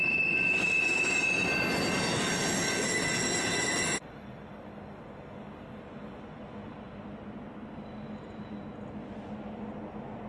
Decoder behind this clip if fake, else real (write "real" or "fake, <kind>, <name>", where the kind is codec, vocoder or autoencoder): real